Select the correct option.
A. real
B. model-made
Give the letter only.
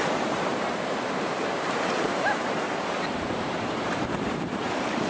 B